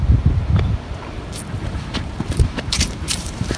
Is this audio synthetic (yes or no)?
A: yes